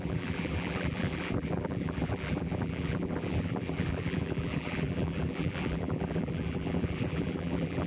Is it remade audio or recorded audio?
remade